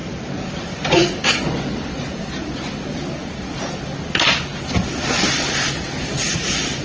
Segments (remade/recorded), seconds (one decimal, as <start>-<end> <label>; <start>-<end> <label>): 0.0-6.8 recorded